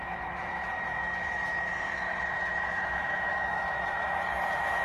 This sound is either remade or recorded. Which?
remade